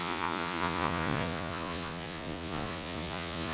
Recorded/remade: remade